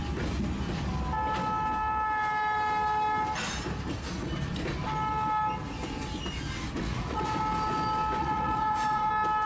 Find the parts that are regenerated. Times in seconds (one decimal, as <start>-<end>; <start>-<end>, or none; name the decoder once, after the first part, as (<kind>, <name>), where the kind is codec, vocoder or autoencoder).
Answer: 6.8-7.4 (vocoder, Vocos); 8.2-9.1